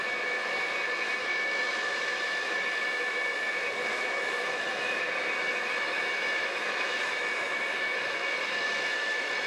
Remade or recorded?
remade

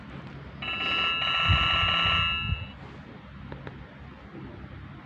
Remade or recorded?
recorded